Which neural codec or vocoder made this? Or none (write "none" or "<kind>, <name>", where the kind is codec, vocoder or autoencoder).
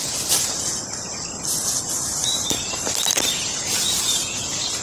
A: vocoder, BigVGAN v2